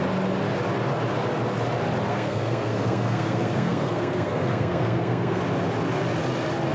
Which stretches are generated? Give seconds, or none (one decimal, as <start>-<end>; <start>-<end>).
2.1-5.4